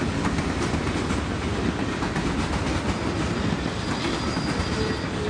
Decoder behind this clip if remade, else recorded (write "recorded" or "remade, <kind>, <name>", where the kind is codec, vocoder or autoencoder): recorded